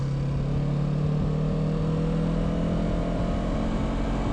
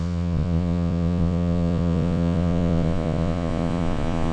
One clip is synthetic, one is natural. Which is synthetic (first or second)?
second